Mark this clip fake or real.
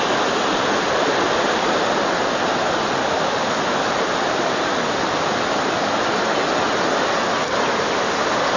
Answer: real